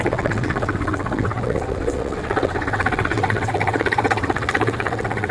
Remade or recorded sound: remade